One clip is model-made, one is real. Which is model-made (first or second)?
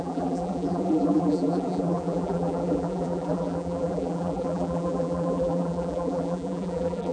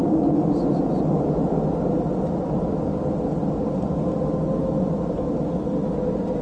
first